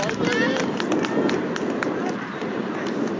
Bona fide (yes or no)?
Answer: yes